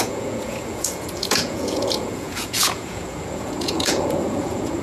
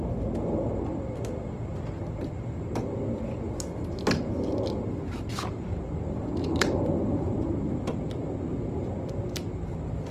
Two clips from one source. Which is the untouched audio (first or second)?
second